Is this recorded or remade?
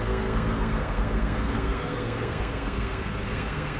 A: remade